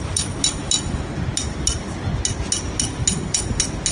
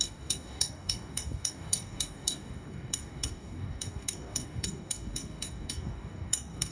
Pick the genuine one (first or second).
first